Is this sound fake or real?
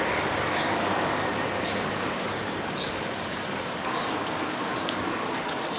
fake